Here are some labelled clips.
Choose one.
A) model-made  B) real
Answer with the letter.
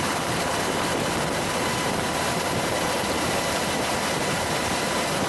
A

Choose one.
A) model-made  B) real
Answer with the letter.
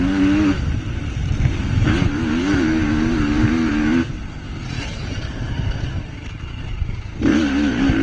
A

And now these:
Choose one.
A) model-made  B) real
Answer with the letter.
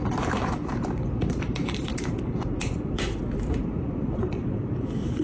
A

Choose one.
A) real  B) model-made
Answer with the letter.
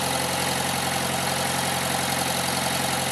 A